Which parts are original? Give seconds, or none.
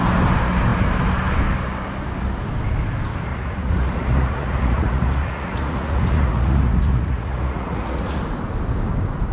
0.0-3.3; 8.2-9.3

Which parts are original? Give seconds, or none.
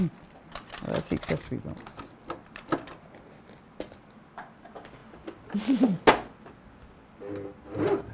0.0-8.1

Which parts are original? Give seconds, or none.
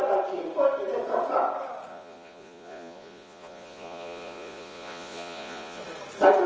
0.0-1.9; 5.8-6.5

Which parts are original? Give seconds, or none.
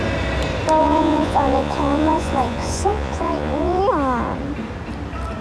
0.0-0.8; 3.8-5.4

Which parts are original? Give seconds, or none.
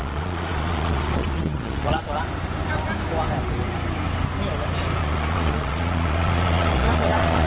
2.0-5.0